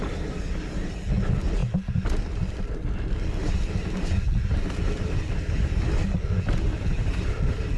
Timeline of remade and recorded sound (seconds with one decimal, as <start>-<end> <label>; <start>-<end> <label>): 0.0-7.8 recorded